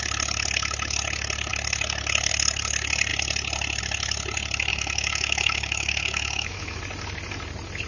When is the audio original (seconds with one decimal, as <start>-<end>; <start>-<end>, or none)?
0.0-4.7; 6.8-7.9